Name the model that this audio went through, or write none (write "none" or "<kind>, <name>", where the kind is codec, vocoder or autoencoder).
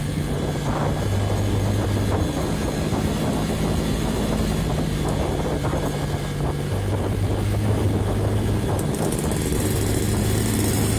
none